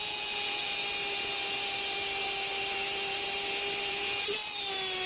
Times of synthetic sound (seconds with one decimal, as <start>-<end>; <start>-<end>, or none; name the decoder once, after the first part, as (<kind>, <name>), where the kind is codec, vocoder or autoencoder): 0.0-0.8 (vocoder, Vocos); 3.9-4.4